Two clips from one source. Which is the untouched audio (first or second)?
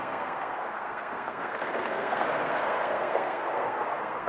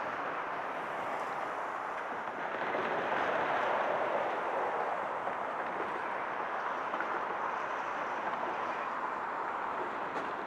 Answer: second